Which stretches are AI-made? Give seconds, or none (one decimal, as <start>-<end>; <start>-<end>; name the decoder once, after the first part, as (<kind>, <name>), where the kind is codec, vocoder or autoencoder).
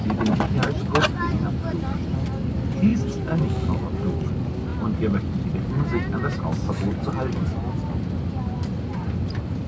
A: 0.0-1.0 (vocoder, BigVGAN v2); 2.9-3.4